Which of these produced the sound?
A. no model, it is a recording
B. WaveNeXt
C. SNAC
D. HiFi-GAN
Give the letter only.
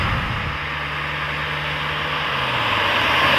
A